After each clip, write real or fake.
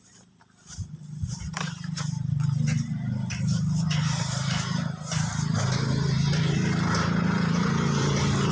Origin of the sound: fake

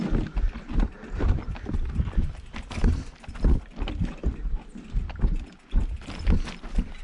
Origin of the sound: real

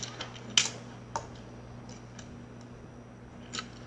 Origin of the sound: real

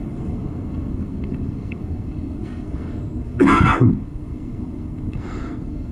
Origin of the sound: fake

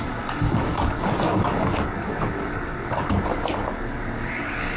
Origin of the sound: fake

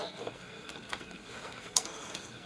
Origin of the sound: fake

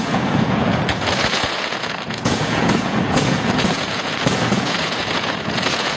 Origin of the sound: fake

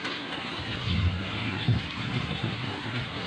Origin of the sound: fake